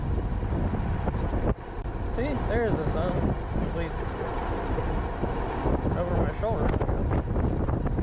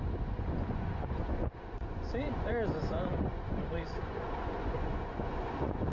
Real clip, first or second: first